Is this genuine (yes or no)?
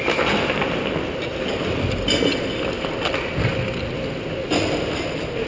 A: yes